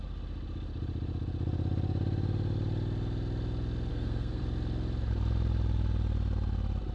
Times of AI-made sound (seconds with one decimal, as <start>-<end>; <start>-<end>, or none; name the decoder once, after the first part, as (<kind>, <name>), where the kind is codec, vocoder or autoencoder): 3.9-4.4 (codec, SNAC)